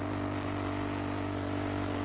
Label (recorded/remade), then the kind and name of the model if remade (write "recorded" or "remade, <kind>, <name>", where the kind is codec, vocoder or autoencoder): recorded